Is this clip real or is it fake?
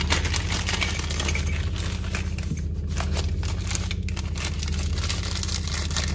real